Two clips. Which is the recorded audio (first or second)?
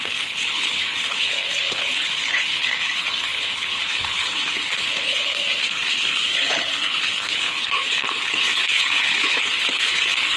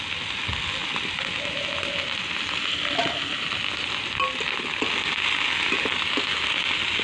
second